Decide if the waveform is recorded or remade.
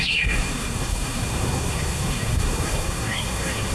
remade